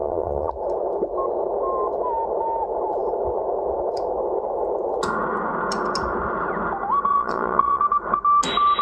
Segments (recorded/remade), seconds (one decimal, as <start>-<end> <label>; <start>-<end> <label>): 0.0-0.5 remade; 0.5-7.1 recorded; 7.1-7.8 remade; 7.8-8.8 recorded

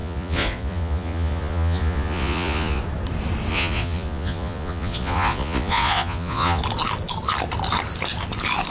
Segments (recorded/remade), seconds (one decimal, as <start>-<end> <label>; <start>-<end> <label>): 0.0-2.8 remade; 2.8-3.5 recorded; 3.5-6.6 remade; 6.6-8.7 recorded

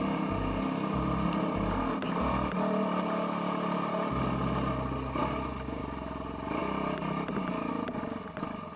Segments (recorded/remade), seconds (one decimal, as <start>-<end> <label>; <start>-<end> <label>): 0.0-8.8 recorded

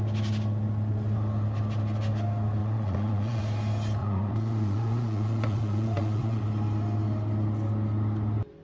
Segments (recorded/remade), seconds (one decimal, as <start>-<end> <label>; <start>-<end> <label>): 0.0-2.6 recorded; 2.6-3.4 remade; 3.4-4.0 recorded; 4.0-6.4 remade; 6.4-8.6 recorded

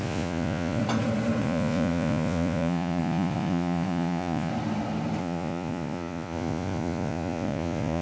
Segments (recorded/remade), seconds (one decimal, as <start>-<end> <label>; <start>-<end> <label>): 0.0-0.8 remade; 0.8-1.4 recorded; 1.4-4.5 remade; 4.5-5.2 recorded; 5.2-8.0 remade

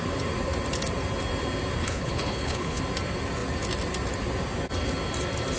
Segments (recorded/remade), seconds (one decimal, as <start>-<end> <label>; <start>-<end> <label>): 0.0-1.8 recorded; 1.8-2.8 remade; 2.8-5.6 recorded

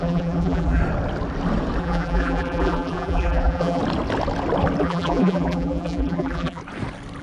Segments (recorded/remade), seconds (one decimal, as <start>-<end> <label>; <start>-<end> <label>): 0.0-0.8 remade; 0.8-1.8 recorded; 1.8-3.8 remade; 3.8-4.8 recorded; 4.8-6.6 remade; 6.6-7.2 recorded